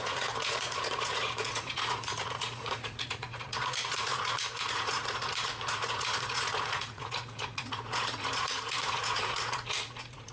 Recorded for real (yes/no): no